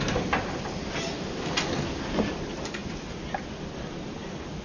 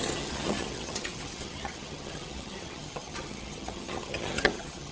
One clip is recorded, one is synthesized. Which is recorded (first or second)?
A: first